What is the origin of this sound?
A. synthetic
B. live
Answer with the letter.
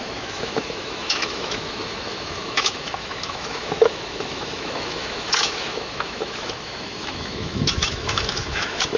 A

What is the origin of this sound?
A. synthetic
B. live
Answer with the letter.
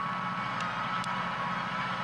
B